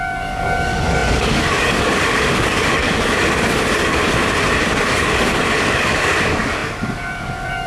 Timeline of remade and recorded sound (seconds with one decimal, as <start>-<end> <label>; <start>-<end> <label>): 0.0-4.0 remade; 4.0-4.7 recorded; 4.7-7.7 remade